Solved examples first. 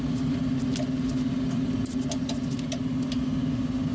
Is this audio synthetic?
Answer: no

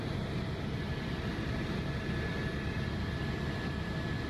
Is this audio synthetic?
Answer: no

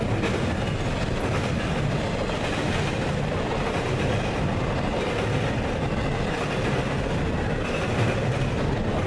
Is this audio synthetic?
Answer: no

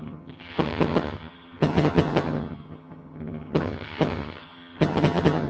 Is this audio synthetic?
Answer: yes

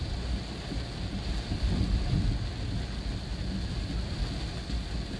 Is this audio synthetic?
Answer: no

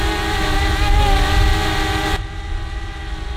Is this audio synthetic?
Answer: no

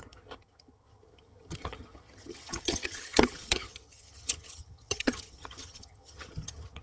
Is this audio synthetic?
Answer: yes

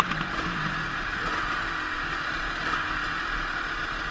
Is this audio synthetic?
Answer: no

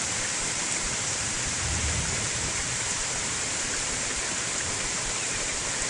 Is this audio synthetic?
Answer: yes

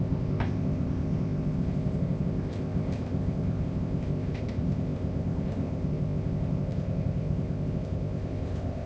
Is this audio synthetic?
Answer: yes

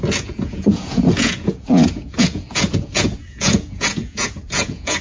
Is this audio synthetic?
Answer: yes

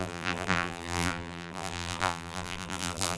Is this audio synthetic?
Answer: yes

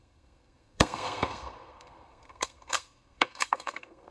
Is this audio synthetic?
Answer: yes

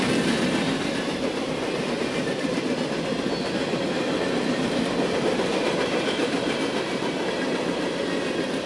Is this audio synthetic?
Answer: no